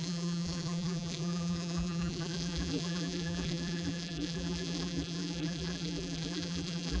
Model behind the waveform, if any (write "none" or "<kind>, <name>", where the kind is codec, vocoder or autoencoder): vocoder, BigVGAN v2